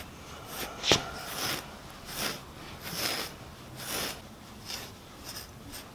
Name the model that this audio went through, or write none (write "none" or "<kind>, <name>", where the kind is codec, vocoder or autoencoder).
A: none